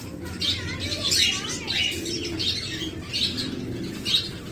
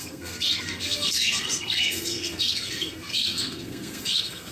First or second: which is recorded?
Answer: first